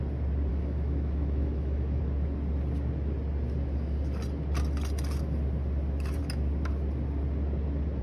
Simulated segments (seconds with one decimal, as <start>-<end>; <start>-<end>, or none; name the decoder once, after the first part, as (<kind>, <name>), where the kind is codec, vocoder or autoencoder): 0.5-2.0 (autoencoder, DAC-VAE)